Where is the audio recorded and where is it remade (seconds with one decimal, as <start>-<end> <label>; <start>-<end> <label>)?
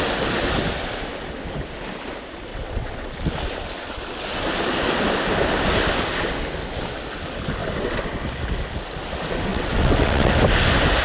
0.0-2.5 recorded; 2.5-3.1 remade; 3.1-9.5 recorded; 9.5-10.3 remade; 10.3-11.0 recorded